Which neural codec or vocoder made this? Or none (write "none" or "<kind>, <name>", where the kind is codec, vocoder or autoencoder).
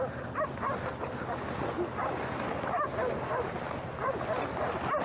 none